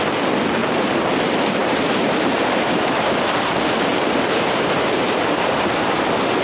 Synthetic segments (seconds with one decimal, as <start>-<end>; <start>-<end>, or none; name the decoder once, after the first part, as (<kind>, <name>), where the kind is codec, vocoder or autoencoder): 0.6-1.2 (vocoder, BigVGAN v2); 1.6-3.0; 3.9-6.0